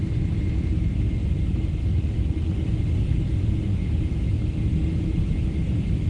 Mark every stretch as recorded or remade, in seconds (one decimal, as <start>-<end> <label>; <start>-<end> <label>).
0.0-6.1 recorded